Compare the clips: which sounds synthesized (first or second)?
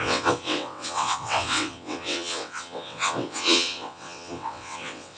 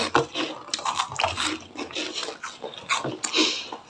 first